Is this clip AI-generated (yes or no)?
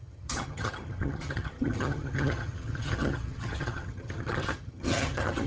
yes